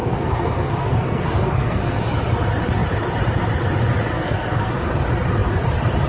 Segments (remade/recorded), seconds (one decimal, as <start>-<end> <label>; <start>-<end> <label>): 0.0-2.0 remade; 2.0-4.1 recorded; 4.1-4.7 remade; 4.7-6.1 recorded